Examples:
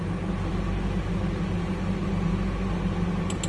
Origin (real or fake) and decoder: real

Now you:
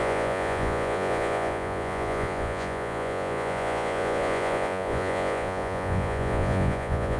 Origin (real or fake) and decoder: fake, vocoder, Vocos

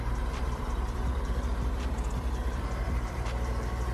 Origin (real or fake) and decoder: fake, vocoder, BigVGAN v2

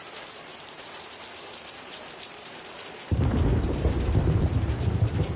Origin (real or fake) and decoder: fake, vocoder, BigVGAN v2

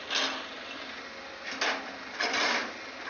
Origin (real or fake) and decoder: real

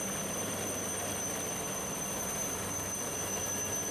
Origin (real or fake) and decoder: real